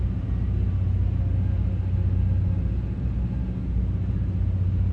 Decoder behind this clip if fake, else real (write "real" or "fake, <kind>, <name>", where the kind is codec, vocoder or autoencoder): real